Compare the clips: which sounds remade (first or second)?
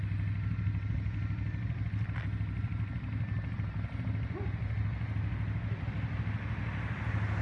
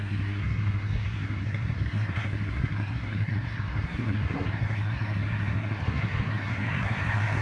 second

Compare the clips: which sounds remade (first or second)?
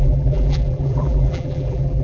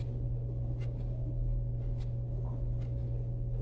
first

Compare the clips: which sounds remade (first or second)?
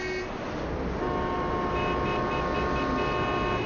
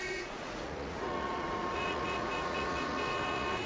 second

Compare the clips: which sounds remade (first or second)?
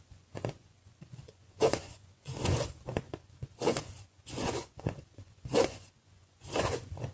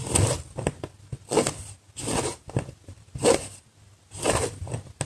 first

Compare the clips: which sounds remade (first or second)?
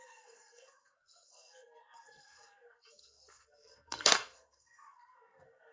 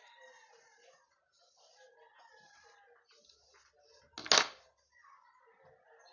first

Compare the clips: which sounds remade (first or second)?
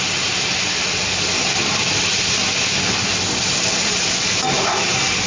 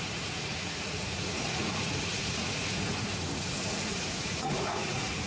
second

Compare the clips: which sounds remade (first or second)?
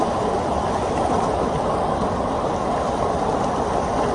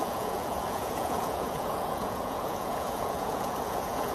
second